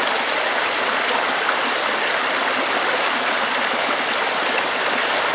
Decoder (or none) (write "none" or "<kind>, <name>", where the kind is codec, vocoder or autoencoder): none